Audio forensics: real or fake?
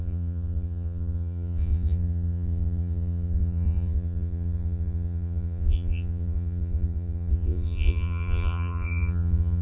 fake